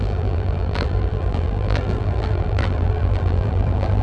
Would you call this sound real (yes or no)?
no